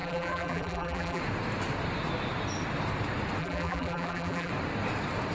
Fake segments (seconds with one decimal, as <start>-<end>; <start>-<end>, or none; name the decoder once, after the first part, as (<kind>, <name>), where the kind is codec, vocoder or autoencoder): 0.0-1.2 (vocoder, BigVGAN v2); 3.4-4.5